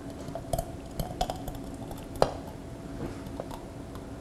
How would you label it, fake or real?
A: real